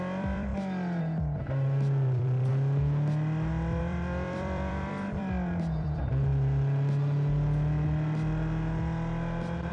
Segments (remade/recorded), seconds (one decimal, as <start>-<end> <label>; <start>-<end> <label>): 0.0-0.5 remade; 0.5-1.0 recorded; 1.0-2.5 remade; 2.5-3.8 recorded; 3.8-6.3 remade; 6.3-9.7 recorded